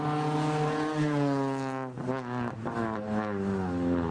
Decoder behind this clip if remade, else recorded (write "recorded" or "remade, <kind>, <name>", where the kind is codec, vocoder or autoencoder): recorded